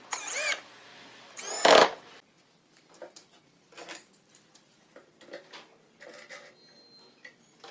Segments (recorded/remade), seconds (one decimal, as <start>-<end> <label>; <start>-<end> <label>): 0.0-0.9 recorded; 0.9-5.3 remade; 5.3-7.7 recorded